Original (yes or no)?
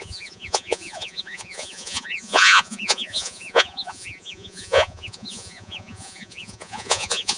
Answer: no